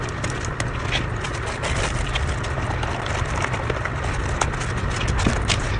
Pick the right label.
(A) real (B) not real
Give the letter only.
A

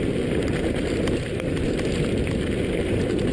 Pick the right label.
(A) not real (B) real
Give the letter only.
A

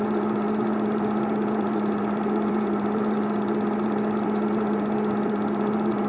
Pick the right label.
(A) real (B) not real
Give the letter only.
B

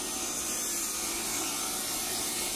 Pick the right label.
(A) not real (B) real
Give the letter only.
B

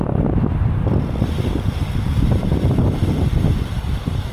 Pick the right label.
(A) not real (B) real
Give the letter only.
A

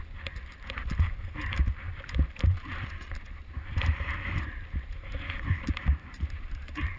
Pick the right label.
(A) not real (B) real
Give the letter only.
A